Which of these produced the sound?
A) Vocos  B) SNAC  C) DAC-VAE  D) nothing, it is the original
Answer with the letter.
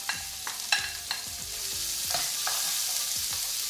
D